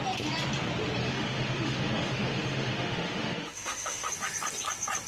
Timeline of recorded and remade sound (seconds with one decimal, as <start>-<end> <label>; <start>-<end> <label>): 0.0-1.0 recorded; 1.0-4.1 remade; 4.1-5.1 recorded